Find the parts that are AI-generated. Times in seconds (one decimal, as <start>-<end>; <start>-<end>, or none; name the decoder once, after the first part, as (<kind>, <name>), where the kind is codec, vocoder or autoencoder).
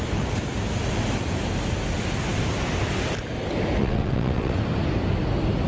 3.8-4.6 (vocoder, WaveNeXt)